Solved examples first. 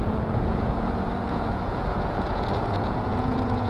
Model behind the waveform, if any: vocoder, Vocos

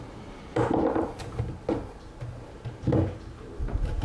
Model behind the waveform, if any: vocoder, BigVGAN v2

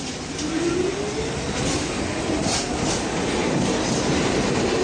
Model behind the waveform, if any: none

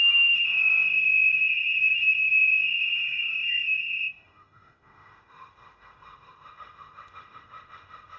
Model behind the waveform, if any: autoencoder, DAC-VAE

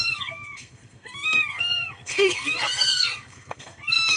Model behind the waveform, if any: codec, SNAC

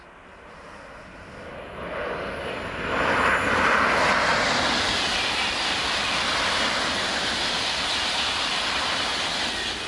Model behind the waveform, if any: none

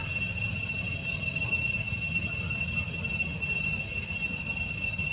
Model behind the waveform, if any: none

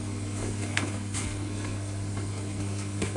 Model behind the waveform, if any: codec, SNAC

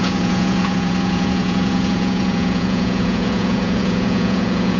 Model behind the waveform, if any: vocoder, Vocos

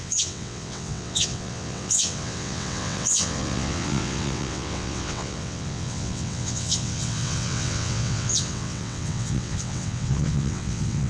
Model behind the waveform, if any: vocoder, WaveNeXt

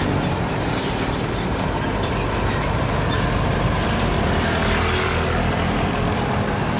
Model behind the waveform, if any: none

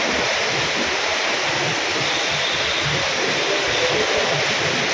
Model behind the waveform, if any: none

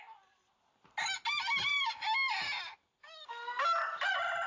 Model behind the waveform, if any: none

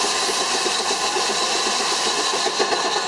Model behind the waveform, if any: none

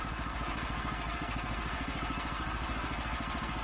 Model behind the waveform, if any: codec, SNAC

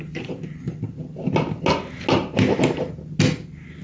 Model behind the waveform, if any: none